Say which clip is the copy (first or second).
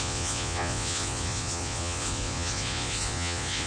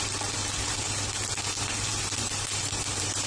first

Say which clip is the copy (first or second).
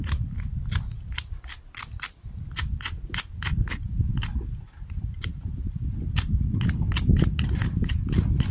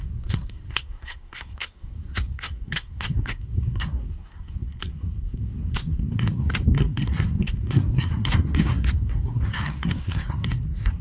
second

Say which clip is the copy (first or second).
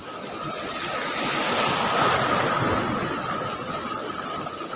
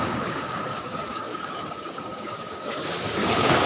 second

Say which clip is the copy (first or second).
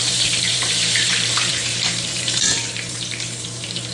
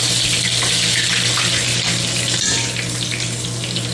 first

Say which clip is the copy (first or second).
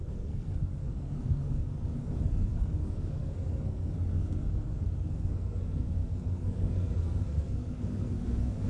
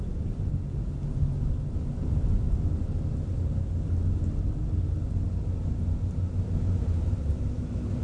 first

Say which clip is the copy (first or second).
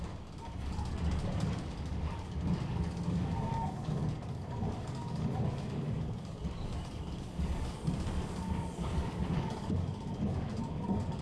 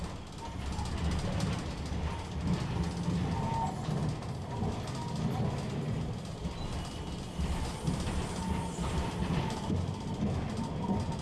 first